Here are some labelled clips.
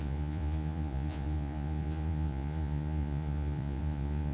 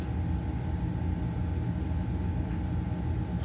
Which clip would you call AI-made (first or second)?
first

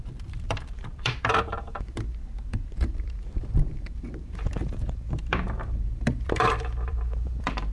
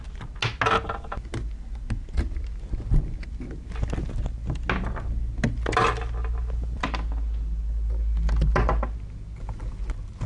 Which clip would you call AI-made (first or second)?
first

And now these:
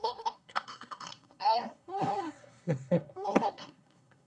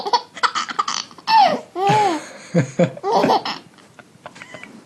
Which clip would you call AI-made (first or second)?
first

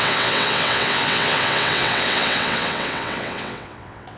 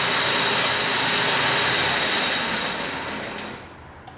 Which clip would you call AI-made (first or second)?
first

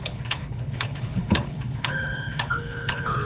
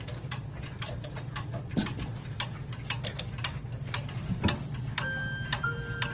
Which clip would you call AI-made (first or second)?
first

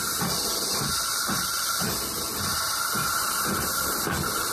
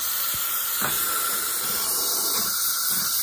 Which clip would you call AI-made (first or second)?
first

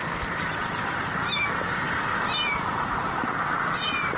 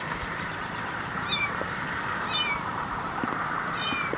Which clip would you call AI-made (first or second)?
second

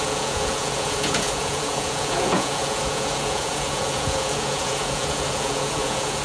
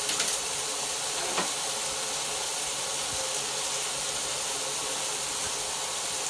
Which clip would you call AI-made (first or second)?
first